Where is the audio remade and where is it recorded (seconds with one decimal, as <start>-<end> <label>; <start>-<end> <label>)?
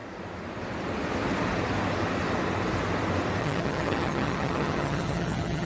0.0-3.4 recorded; 3.4-5.6 remade